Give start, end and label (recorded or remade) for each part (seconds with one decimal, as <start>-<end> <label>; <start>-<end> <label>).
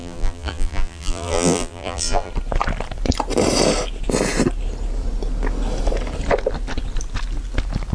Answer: 0.0-2.3 remade; 2.3-7.9 recorded